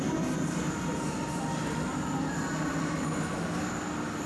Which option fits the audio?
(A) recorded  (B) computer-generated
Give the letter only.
A